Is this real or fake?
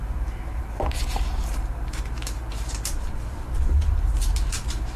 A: fake